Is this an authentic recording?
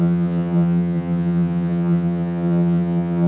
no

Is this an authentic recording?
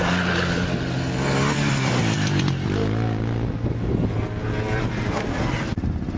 yes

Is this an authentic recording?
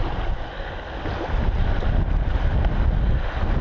yes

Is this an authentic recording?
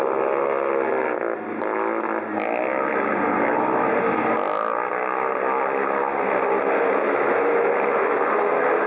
yes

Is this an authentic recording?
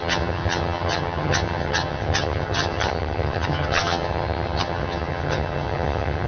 no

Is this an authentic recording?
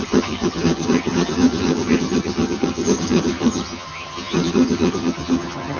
no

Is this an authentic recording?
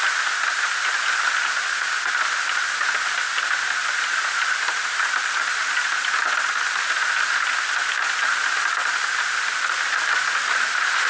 yes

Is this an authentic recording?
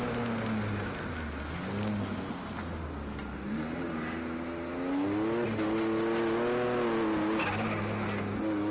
yes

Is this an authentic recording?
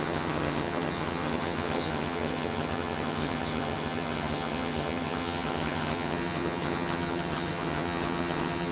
no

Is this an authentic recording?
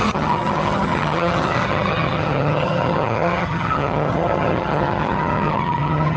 no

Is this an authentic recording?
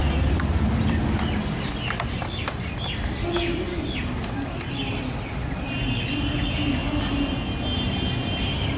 yes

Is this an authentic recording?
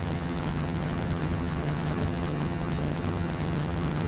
no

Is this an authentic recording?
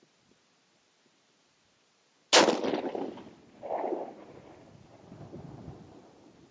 yes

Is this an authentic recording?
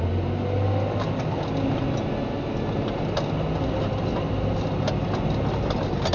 yes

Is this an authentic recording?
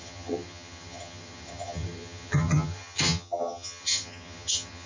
no